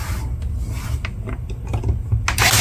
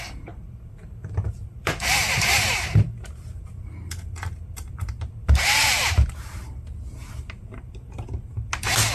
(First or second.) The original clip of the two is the first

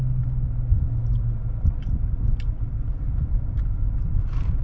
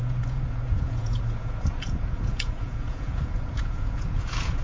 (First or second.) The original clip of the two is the first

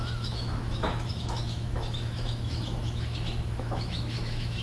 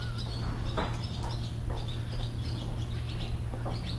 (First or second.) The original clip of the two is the second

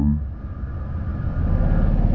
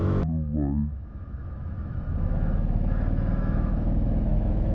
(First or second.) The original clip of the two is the first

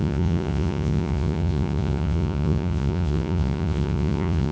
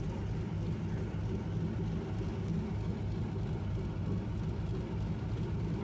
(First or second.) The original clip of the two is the second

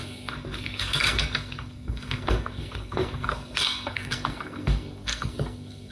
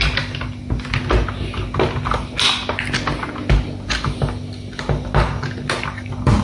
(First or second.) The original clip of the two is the second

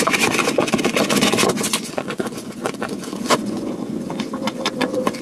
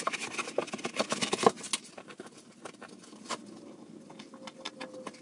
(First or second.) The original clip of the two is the second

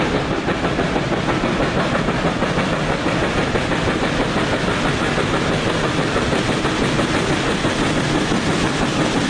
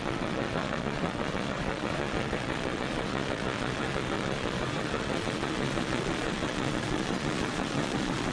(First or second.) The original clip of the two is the first